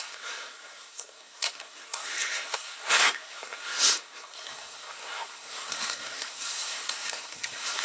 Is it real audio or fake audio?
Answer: fake